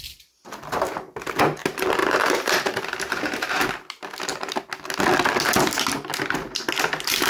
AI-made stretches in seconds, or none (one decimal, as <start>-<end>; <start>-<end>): 2.0-3.7